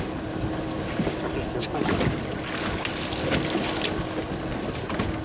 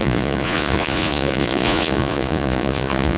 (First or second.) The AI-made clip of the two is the second